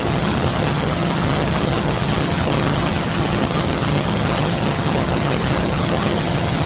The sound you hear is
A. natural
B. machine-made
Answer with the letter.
B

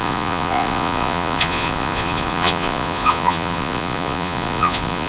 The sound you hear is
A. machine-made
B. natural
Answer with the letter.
A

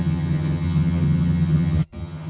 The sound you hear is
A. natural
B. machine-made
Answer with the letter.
B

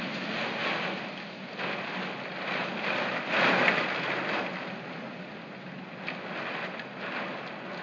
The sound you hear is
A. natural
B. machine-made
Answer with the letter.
A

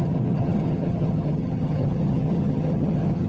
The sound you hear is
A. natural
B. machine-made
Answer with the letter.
B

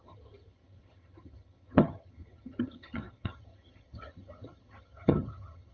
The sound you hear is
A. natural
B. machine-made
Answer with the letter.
B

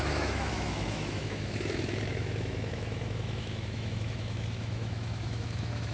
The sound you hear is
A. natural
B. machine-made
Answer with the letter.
B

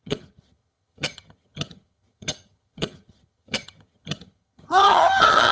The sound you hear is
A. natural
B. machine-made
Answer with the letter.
B